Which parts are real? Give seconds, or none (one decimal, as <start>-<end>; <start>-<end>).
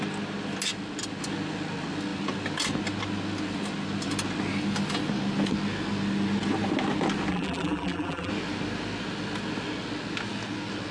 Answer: 0.0-7.3; 8.3-10.9